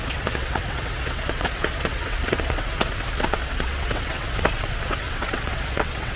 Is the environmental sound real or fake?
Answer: fake